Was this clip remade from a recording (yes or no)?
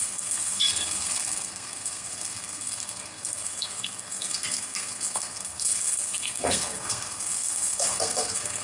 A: yes